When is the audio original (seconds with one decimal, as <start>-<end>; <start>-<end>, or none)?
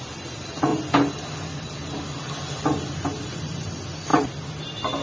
0.7-3.2; 4.1-4.6